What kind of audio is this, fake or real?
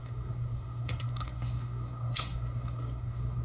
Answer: fake